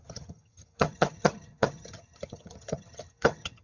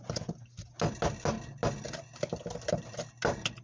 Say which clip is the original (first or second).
second